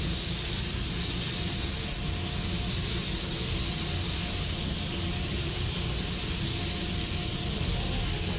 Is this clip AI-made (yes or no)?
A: no